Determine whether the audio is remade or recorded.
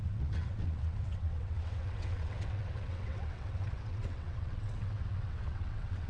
remade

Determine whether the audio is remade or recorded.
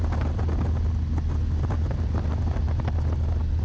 recorded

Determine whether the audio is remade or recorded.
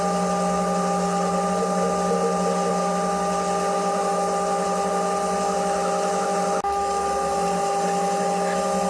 recorded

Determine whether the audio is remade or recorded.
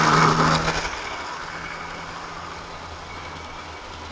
recorded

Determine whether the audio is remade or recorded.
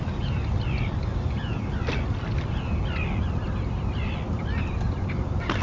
recorded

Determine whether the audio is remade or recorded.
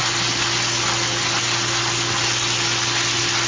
recorded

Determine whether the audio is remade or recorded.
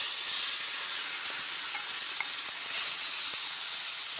remade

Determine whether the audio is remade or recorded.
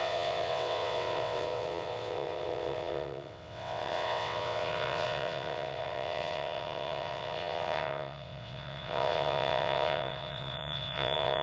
remade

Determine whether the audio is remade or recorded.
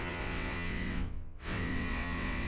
remade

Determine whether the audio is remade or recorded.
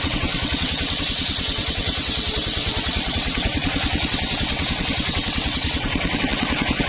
remade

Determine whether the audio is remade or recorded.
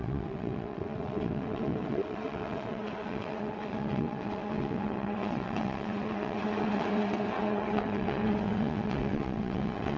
remade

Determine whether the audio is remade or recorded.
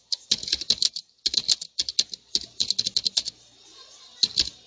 recorded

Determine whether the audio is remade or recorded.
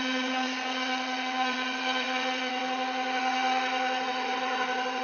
remade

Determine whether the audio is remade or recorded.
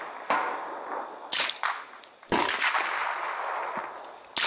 recorded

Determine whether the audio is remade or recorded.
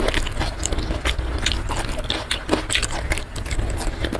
recorded